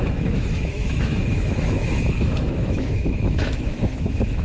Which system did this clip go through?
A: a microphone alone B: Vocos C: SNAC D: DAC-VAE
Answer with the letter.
D